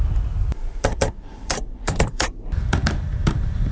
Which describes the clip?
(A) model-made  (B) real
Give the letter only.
A